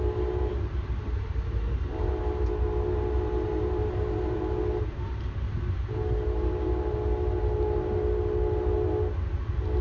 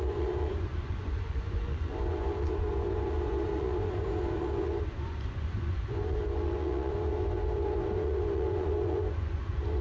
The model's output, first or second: second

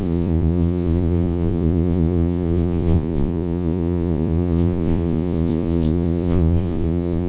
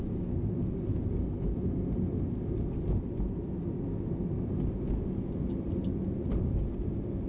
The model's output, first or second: first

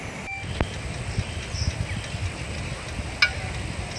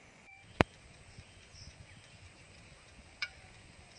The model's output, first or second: second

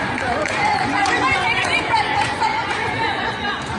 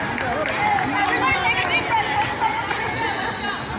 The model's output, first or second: first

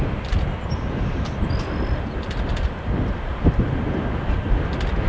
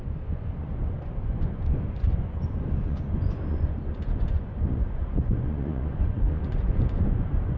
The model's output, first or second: second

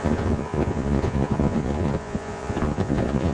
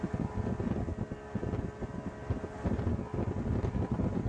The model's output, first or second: first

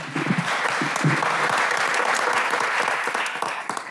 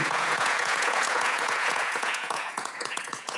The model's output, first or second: second